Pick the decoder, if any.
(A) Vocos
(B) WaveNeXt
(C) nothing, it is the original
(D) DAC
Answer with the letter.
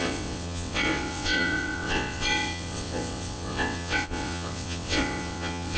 B